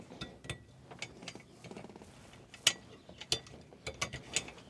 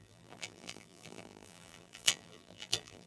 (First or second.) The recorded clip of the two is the first